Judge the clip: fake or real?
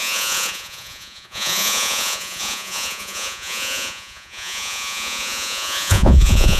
fake